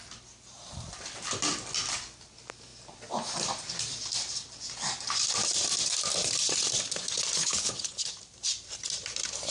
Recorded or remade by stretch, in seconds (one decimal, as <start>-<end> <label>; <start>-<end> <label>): 0.0-7.4 recorded; 7.4-8.1 remade; 8.1-9.5 recorded